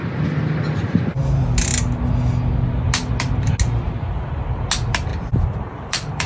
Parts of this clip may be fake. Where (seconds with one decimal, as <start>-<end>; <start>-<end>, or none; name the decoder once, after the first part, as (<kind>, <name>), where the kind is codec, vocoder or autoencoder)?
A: 5.1-6.3 (vocoder, BigVGAN v2)

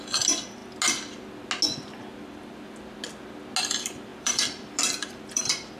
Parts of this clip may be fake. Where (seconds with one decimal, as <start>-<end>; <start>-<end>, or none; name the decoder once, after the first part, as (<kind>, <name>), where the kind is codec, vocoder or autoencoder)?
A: 0.0-0.6 (vocoder, BigVGAN v2); 3.6-5.8

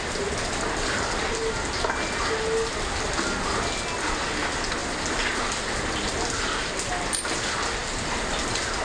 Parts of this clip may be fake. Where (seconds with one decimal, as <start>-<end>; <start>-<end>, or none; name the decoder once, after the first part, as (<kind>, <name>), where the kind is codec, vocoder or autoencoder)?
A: none